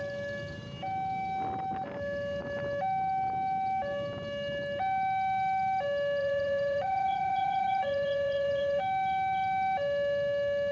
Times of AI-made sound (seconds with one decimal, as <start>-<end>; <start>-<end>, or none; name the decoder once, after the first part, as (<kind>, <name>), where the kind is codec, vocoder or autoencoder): 6.2-8.8 (vocoder, Vocos)